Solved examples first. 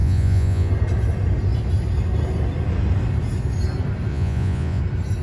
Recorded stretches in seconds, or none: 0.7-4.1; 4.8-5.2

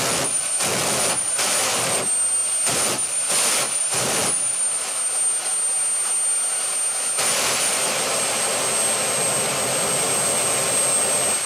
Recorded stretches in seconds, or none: 0.0-11.5

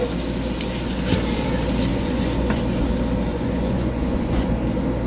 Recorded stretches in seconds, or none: 0.0-1.9; 2.6-3.3; 4.5-5.1

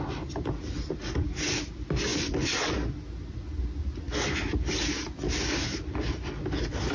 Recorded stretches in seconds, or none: 0.0-6.9

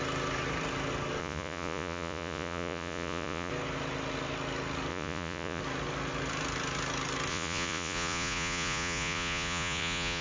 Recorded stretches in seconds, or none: 0.0-1.2; 3.5-4.9; 5.6-7.3

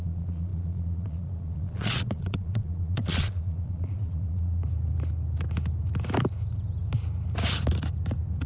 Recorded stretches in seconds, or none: 4.6-8.5